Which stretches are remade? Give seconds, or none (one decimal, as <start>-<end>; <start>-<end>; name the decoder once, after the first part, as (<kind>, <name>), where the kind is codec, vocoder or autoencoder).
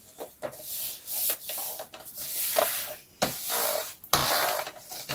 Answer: 1.6-3.4 (vocoder, BigVGAN v2); 4.2-5.1